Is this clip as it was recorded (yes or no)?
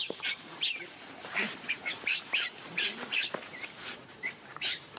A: no